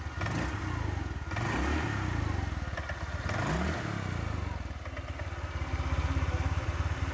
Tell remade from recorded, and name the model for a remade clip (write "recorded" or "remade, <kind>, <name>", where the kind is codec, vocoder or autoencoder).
recorded